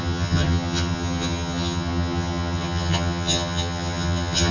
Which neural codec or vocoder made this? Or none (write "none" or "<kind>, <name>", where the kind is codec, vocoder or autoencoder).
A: vocoder, HiFi-GAN